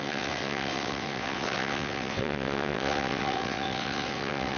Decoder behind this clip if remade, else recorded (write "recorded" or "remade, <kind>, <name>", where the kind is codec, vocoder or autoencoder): remade, vocoder, WaveNeXt